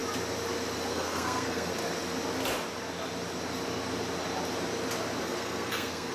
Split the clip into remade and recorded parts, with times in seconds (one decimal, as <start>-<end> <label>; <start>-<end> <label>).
0.0-0.9 recorded; 0.9-1.7 remade; 1.7-5.2 recorded; 5.2-6.1 remade